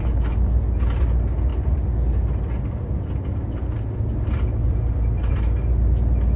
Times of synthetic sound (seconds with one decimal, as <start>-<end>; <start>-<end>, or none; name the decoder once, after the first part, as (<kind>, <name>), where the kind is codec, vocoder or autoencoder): none